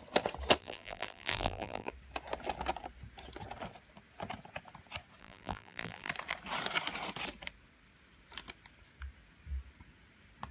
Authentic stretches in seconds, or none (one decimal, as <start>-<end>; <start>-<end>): 0.0-0.6; 1.9-5.2; 6.1-10.5